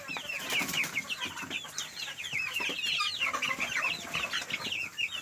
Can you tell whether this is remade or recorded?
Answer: recorded